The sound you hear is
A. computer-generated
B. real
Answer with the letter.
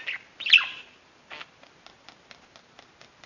B